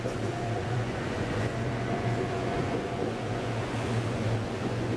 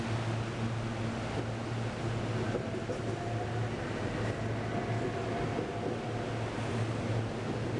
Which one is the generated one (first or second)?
first